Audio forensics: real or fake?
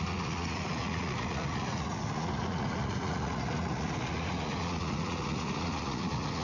fake